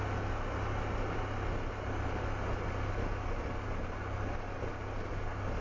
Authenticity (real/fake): real